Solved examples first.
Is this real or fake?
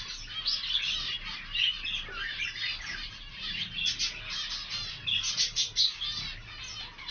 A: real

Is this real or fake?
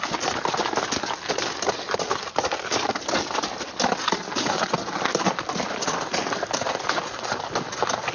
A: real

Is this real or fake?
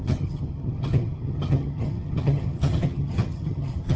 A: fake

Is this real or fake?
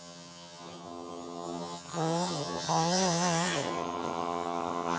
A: fake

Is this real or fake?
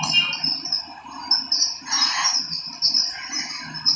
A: real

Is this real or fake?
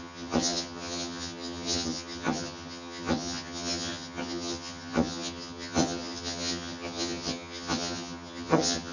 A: fake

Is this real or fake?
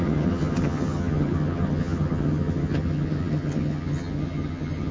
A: fake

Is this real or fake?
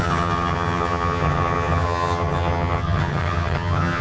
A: fake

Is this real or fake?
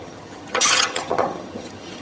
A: fake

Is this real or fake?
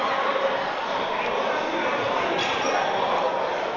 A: real